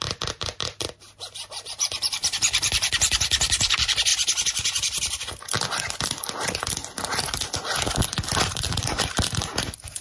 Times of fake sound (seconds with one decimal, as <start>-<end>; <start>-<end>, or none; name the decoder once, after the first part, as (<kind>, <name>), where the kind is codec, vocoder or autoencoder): 0.0-4.1 (vocoder, BigVGAN v2); 8.5-10.0